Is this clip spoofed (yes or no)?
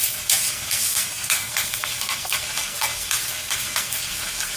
yes